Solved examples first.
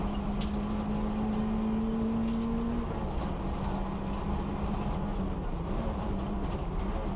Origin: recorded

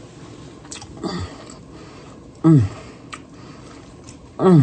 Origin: recorded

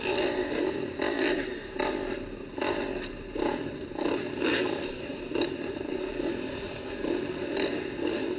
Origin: remade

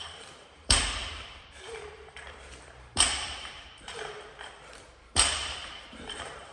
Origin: remade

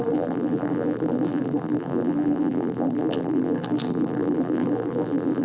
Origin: remade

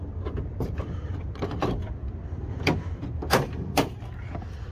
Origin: recorded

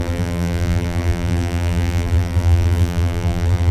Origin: remade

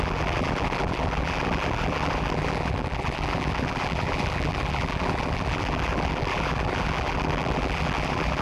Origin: remade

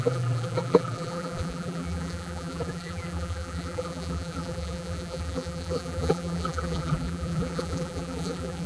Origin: remade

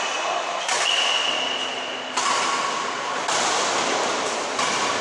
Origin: remade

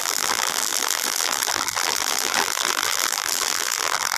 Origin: remade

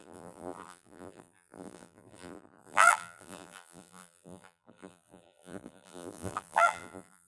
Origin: remade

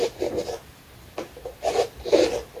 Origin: recorded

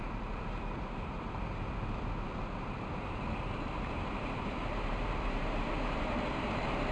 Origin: remade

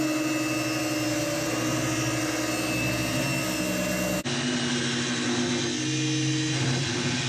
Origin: recorded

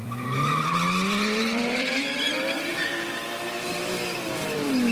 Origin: remade